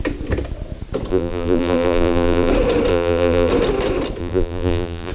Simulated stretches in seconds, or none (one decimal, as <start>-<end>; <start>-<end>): 1.1-2.5; 2.9-3.5; 4.2-5.1